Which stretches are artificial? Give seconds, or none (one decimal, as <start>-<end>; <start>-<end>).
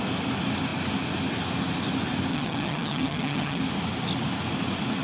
2.3-3.6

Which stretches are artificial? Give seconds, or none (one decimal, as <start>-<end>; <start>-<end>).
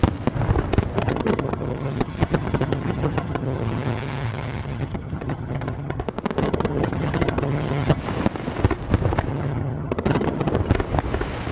1.0-6.0; 6.4-8.0; 9.3-10.5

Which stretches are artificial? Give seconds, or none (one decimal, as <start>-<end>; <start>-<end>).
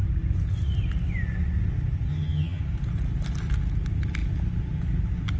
2.1-2.6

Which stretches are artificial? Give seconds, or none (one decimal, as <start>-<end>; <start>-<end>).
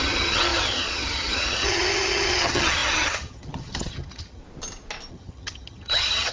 0.0-4.4; 5.1-6.3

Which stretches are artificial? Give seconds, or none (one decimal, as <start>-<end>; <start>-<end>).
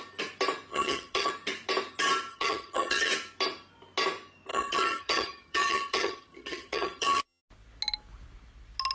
0.7-1.3; 2.3-3.1; 4.5-7.4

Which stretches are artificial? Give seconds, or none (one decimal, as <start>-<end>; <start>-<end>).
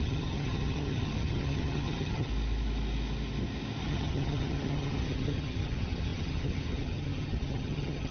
0.0-2.3; 3.8-8.1